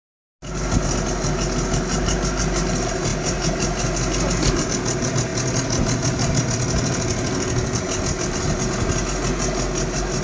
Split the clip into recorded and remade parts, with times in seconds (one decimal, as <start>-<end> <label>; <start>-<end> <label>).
0.0-10.2 recorded